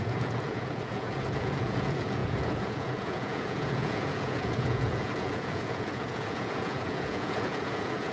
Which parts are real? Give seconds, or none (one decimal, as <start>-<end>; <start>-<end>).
none